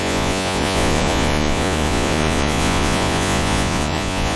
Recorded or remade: remade